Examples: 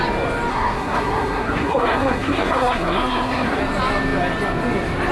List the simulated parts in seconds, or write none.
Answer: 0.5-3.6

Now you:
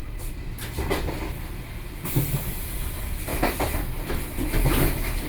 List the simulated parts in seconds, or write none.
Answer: none

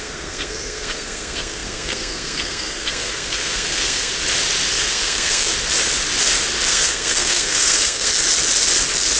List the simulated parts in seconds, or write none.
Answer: 0.0-4.1; 4.7-5.5; 6.7-8.1